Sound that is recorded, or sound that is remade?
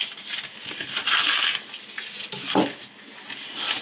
recorded